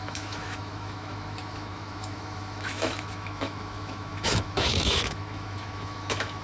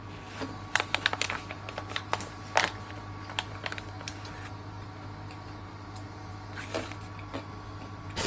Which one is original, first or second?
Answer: second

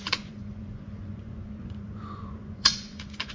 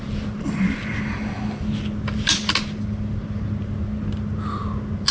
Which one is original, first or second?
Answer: second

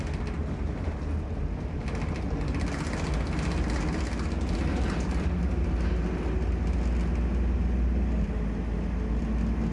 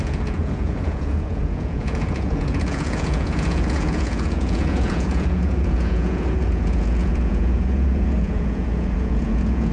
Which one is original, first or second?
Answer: first